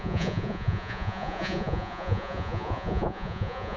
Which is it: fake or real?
fake